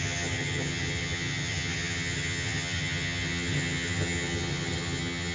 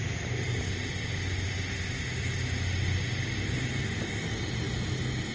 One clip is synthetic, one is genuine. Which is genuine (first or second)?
second